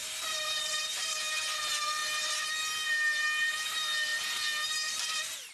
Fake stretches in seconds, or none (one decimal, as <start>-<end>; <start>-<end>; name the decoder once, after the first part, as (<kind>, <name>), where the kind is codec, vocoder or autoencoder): 0.0-1.1 (vocoder, BigVGAN v2)